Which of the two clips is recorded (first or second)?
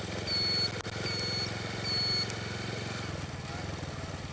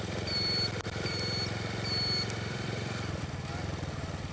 first